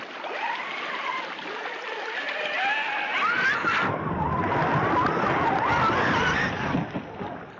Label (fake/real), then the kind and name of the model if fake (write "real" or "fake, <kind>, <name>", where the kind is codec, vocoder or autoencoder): real